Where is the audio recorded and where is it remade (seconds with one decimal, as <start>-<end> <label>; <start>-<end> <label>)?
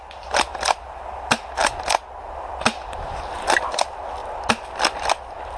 0.0-5.6 recorded